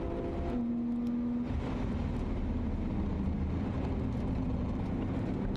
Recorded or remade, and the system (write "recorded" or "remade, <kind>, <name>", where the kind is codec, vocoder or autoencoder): recorded